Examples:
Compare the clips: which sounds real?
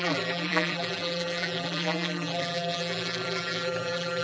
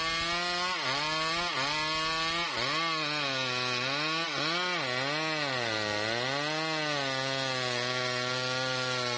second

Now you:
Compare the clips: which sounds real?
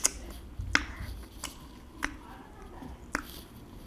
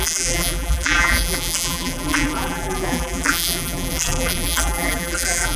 first